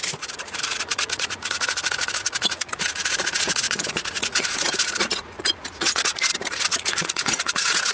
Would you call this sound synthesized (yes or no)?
yes